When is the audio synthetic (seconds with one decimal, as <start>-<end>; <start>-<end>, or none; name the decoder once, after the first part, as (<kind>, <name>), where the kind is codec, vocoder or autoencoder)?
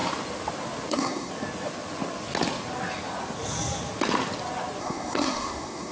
0.9-1.3 (codec, SNAC); 4.8-5.9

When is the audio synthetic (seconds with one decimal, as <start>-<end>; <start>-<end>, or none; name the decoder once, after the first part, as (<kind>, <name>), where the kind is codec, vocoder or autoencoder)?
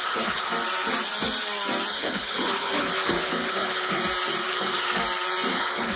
0.0-0.5 (codec, HILCodec); 1.9-4.0; 4.5-5.0; 5.5-6.0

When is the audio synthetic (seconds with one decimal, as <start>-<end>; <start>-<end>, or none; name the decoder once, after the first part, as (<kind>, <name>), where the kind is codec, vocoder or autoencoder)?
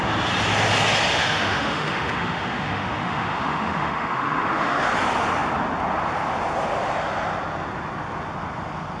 1.1-4.8 (autoencoder, DAC-VAE)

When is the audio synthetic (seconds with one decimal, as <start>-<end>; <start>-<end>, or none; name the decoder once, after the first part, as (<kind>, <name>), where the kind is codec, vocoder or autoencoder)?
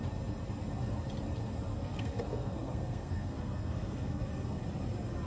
1.7-4.6 (codec, SNAC)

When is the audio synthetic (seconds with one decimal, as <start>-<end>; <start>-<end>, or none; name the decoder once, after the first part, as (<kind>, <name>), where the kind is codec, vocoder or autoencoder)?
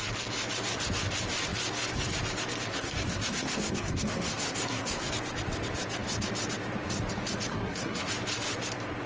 2.7-5.1 (codec, SNAC); 7.5-8.1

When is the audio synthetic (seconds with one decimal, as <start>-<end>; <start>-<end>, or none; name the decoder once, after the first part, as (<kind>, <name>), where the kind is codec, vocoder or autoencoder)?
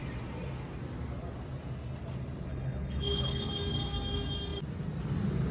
2.5-3.5 (codec, HILCodec)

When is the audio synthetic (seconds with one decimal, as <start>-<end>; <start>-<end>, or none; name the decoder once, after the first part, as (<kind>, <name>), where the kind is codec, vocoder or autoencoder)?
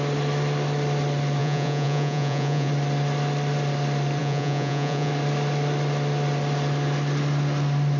1.4-2.7 (vocoder, Vocos); 4.2-5.1